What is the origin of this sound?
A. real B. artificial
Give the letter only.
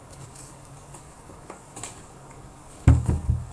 B